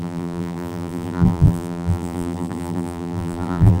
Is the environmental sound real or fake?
fake